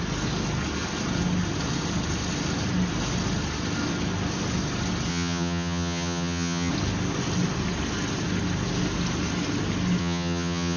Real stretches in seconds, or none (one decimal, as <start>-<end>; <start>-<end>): 0.0-5.1; 6.7-10.0